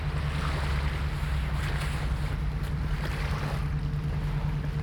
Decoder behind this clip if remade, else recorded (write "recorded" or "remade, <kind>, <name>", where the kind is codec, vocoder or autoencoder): recorded